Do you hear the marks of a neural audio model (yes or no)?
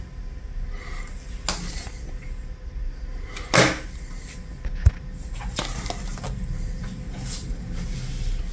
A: no